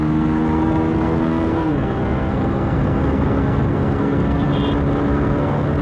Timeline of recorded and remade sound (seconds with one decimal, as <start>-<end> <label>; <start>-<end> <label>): 0.0-4.5 remade; 4.5-5.1 recorded; 5.1-5.8 remade